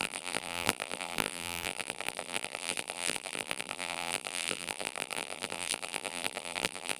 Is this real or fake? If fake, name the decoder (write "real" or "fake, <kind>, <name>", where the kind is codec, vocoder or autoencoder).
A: fake, vocoder, BigVGAN v2